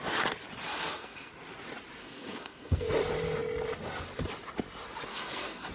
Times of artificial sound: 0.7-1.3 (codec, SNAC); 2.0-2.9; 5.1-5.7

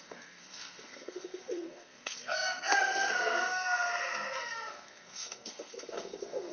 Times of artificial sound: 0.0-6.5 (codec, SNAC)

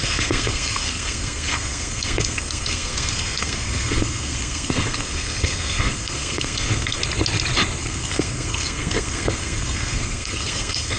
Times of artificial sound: 0.0-7.0 (codec, SNAC); 7.8-11.0